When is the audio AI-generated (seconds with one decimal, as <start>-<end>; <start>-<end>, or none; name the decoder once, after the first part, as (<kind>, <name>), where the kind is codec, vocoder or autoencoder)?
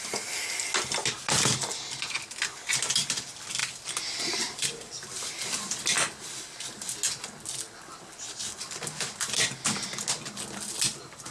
none